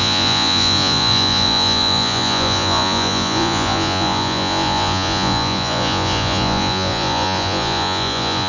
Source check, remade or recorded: remade